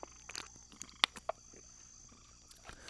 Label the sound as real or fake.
real